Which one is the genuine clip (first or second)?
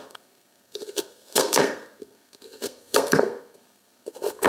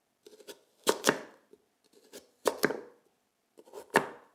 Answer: second